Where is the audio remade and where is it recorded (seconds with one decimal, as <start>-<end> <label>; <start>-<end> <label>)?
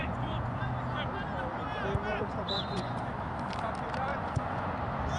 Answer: 0.0-0.6 remade; 0.6-2.1 recorded; 2.1-3.0 remade; 3.0-4.1 recorded; 4.1-4.7 remade; 4.7-5.2 recorded